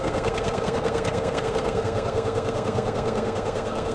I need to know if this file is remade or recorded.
remade